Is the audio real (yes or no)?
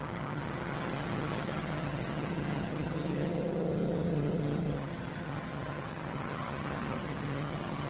no